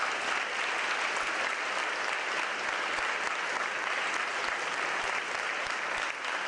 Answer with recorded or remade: recorded